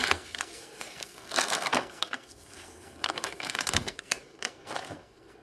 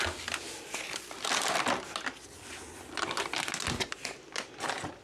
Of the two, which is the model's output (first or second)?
first